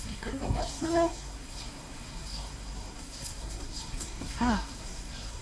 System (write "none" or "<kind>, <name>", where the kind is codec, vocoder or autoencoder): codec, SNAC